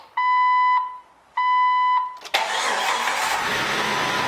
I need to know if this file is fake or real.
real